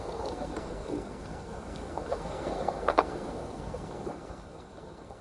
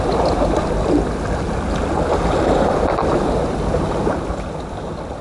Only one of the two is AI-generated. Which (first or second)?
first